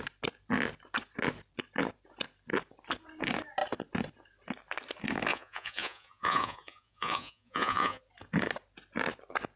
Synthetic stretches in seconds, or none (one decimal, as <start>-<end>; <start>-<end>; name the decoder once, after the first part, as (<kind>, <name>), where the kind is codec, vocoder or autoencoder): 5.3-8.0 (vocoder, Vocos)